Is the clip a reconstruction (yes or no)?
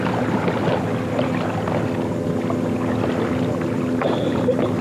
no